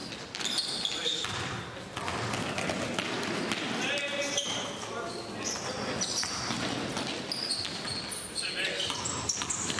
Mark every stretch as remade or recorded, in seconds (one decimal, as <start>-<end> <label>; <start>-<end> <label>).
0.0-9.8 recorded